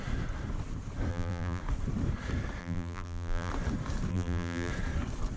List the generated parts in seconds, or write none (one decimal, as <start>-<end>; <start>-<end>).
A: 1.1-1.6; 2.6-3.5; 4.1-4.7